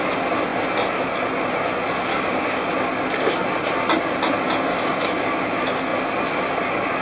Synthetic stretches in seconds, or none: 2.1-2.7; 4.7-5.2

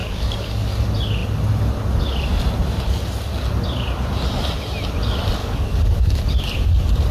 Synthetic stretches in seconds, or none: 0.0-0.7; 5.4-6.2